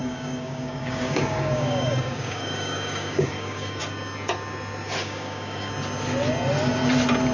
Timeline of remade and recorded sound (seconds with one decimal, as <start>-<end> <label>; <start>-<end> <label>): 0.0-3.8 remade; 3.8-5.0 recorded; 5.0-5.7 remade; 5.7-7.3 recorded